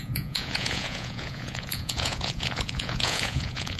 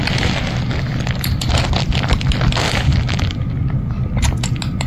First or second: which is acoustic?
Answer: second